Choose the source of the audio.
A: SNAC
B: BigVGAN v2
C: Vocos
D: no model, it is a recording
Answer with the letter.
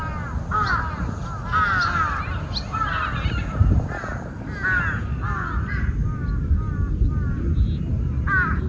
D